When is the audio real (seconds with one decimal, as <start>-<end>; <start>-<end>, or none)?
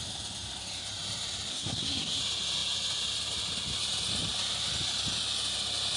0.0-1.5; 2.2-6.0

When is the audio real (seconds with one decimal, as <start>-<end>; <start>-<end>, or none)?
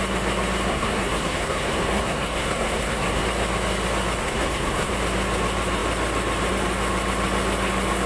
0.0-0.7; 3.2-4.2; 4.9-8.1